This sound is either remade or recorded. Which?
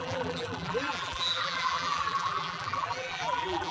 remade